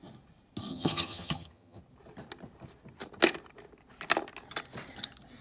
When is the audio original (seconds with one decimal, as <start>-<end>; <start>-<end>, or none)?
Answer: 0.0-0.7; 1.8-5.4